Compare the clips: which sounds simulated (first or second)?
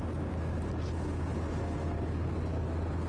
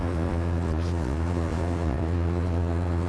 second